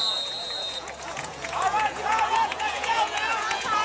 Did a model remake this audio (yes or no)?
yes